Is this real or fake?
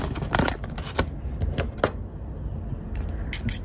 real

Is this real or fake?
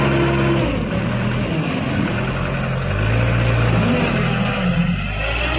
real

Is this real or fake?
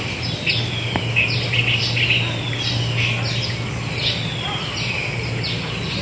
real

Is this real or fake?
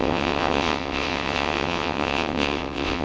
fake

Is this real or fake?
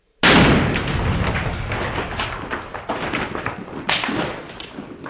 real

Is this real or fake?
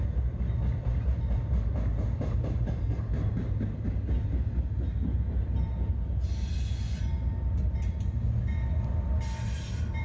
real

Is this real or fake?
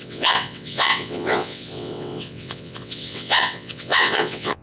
fake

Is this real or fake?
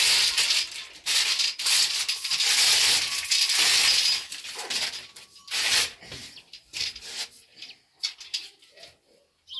real